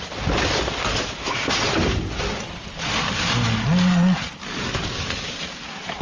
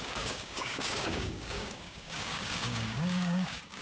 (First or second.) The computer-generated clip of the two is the second